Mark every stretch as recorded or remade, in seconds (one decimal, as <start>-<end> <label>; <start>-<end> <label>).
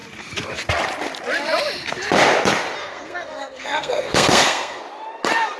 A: 0.0-2.8 recorded; 2.8-4.8 remade; 4.8-5.6 recorded